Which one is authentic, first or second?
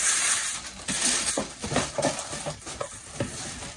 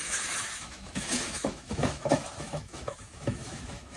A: first